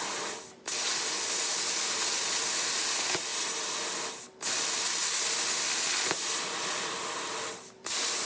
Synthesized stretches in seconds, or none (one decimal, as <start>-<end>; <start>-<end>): none

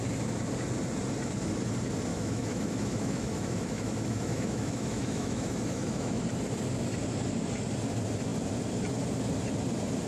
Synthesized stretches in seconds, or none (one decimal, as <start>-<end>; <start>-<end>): 2.1-6.2

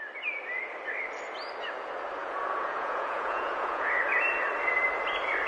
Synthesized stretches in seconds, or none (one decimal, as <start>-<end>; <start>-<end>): 2.2-3.9

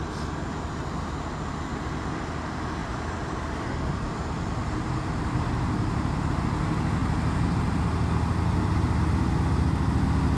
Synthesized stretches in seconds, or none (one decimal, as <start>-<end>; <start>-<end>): 2.8-6.4; 7.0-7.8

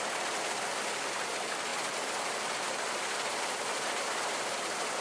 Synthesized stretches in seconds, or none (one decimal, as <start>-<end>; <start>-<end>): 0.0-1.7; 2.6-5.0